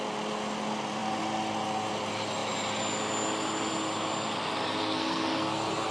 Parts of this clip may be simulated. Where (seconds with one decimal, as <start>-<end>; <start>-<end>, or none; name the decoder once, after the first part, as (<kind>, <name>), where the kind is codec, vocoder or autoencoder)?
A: 4.8-5.9 (codec, SNAC)